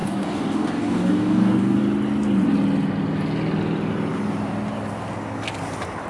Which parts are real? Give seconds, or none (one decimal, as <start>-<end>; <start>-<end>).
1.8-6.1